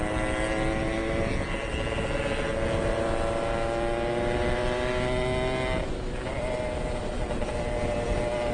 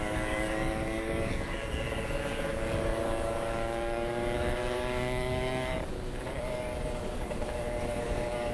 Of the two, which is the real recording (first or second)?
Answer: first